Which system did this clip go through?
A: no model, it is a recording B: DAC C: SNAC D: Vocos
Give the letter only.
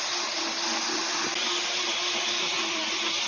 A